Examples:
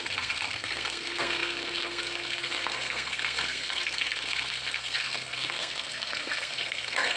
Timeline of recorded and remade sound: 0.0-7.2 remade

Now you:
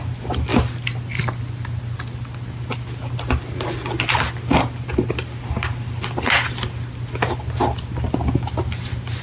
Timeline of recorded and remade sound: 0.0-9.2 recorded

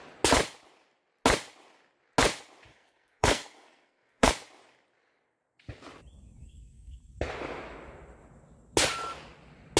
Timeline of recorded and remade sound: 0.0-2.7 recorded; 2.7-4.3 remade; 4.3-6.4 recorded; 6.4-7.0 remade; 7.0-9.8 recorded

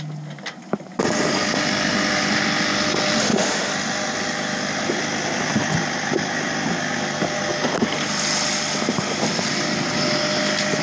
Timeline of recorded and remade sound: 0.0-3.2 recorded; 3.2-3.7 remade; 3.7-10.8 recorded

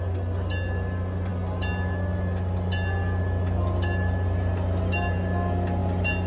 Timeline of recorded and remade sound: 0.0-6.3 recorded